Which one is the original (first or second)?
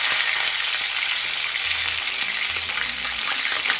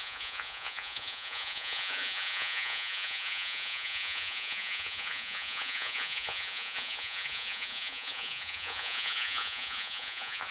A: first